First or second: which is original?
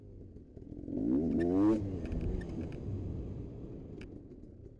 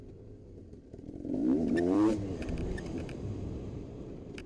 first